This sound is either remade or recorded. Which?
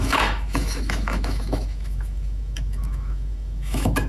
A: remade